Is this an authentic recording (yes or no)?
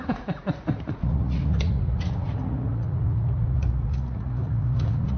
no